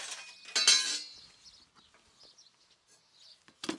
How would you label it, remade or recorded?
recorded